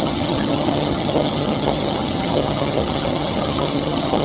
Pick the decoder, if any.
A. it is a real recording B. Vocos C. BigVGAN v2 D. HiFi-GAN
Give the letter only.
D